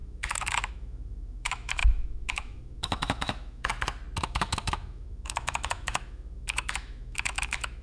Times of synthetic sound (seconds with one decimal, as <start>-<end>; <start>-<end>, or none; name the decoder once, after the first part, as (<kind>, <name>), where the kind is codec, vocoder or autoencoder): 0.0-3.7 (autoencoder, DAC-VAE); 4.2-7.8